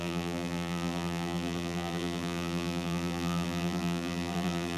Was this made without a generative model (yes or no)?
no